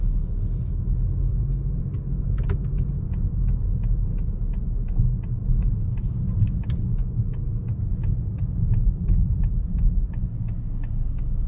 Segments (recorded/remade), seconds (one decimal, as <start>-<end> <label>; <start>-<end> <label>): 0.0-1.3 recorded; 1.3-1.8 remade; 1.8-5.4 recorded; 5.4-6.3 remade; 6.3-11.5 recorded